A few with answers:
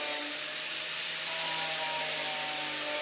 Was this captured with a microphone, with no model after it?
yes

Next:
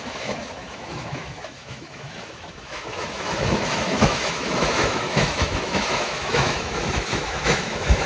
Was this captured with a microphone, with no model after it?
no